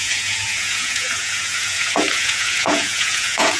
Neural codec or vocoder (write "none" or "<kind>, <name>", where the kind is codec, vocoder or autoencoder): vocoder, Vocos